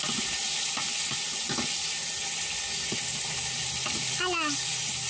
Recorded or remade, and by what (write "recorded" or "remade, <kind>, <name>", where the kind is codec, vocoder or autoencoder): recorded